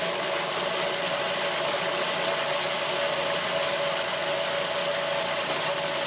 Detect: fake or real real